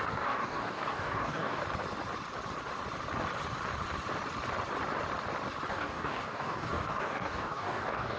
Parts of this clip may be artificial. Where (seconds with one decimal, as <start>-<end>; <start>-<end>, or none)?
0.0-1.6; 5.7-8.2